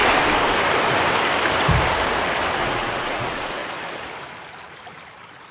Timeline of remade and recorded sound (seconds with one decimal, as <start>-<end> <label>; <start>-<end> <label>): 0.0-2.6 recorded; 2.6-3.6 remade; 3.6-5.5 recorded